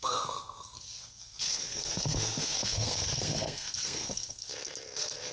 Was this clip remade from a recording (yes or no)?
yes